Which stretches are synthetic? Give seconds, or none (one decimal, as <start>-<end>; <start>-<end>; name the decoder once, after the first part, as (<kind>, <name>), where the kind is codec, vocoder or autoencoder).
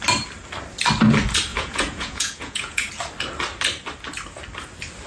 1.5-2.9 (vocoder, Vocos)